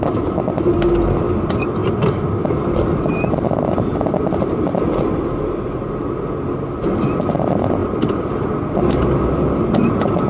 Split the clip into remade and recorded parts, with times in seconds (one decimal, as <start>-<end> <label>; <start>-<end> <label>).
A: 0.0-10.3 recorded

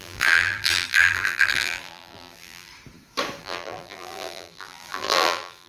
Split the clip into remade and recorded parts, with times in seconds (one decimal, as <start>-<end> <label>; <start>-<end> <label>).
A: 0.0-2.7 remade; 2.7-3.4 recorded; 3.4-5.7 remade

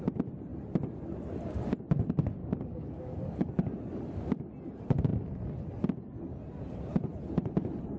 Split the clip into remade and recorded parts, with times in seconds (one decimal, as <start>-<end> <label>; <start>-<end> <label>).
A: 0.0-2.4 recorded; 2.4-3.5 remade; 3.5-8.0 recorded